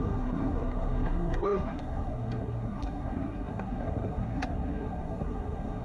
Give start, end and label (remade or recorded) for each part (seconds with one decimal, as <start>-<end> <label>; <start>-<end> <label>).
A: 0.0-5.8 remade